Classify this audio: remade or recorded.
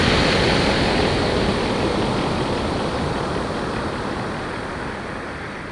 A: recorded